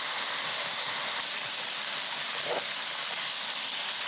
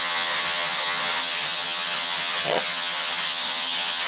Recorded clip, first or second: first